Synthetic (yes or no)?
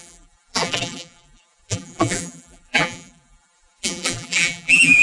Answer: yes